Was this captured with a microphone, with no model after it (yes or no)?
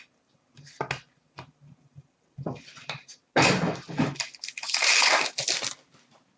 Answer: yes